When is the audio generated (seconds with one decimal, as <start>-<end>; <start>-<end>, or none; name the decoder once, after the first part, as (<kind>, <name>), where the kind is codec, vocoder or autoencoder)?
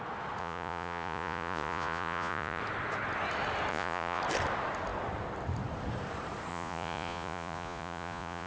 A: 0.4-2.6 (vocoder, Vocos); 3.7-4.2; 6.5-8.5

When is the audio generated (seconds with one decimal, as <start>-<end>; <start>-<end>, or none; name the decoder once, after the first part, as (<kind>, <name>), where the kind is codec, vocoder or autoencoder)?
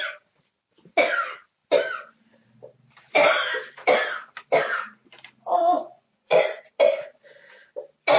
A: 5.6-6.6 (vocoder, Vocos)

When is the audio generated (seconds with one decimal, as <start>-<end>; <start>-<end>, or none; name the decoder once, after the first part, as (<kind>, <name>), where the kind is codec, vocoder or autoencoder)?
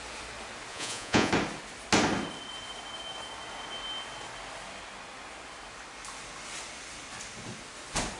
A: 0.7-1.3 (vocoder, Vocos)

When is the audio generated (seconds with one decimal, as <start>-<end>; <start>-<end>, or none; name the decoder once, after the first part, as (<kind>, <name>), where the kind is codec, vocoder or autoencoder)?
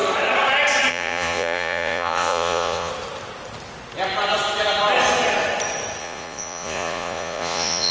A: 0.9-2.9 (vocoder, Vocos); 6.0-7.9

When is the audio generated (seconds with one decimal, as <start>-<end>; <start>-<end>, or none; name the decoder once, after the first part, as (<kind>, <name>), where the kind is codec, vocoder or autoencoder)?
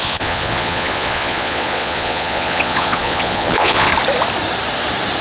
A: 0.0-3.9 (vocoder, Vocos)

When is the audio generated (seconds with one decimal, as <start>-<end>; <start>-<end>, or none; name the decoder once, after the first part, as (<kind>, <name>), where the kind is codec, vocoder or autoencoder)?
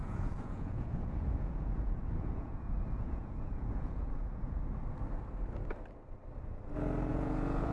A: 0.0-4.6 (vocoder, Vocos); 7.1-7.7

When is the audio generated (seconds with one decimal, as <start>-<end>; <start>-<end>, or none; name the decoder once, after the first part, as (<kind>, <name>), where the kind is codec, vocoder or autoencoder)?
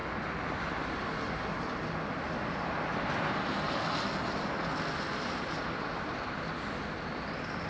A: none